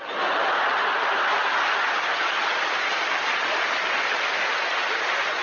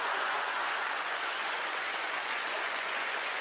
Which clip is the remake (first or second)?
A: second